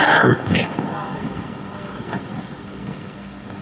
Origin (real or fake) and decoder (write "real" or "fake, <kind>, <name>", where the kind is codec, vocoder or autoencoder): fake, codec, SNAC